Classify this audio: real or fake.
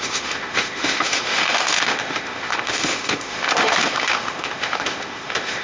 fake